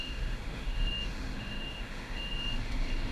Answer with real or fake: fake